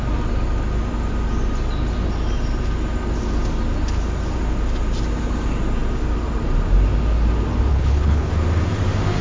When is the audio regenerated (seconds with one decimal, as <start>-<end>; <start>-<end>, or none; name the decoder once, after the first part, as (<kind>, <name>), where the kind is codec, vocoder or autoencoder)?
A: 7.7-8.3 (codec, HILCodec)